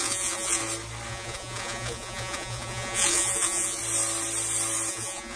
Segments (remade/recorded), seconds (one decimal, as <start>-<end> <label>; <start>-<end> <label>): 0.0-0.6 remade; 0.6-1.1 recorded; 1.1-3.8 remade; 3.8-4.9 recorded; 4.9-5.4 remade